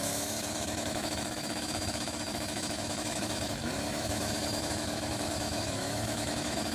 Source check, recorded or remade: remade